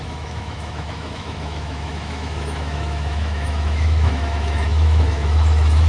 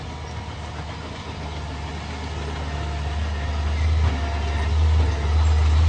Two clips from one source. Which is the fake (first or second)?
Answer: first